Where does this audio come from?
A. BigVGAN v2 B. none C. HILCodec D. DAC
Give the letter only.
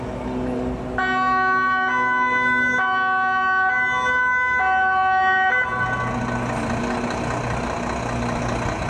B